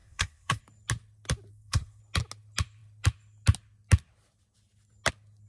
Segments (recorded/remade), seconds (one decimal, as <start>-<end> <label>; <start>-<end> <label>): 0.0-0.6 remade; 0.6-1.5 recorded; 1.5-2.0 remade; 2.0-5.5 recorded